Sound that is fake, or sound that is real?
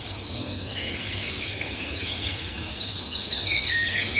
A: fake